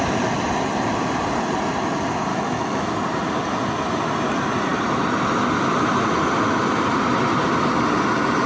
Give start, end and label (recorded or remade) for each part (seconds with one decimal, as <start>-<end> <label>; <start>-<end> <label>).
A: 0.0-2.3 recorded; 2.3-2.9 remade; 2.9-8.5 recorded